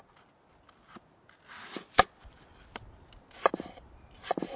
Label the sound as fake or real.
real